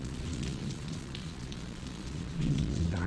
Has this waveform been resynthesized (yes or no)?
yes